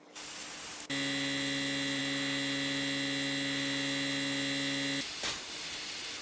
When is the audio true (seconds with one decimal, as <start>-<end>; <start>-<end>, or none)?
0.0-6.2

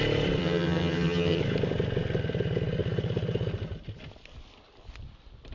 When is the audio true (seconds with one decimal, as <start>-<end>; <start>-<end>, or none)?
0.0-0.4; 1.4-5.5